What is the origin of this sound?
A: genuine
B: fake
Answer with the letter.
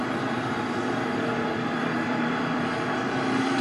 B